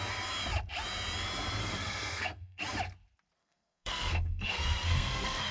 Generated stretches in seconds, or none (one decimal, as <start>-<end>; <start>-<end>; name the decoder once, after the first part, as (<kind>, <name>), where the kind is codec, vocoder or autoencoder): 1.6-2.6 (codec, SNAC); 3.4-5.5